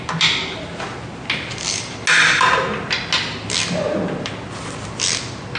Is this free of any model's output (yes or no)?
yes